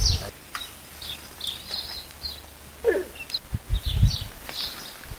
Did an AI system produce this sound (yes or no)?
no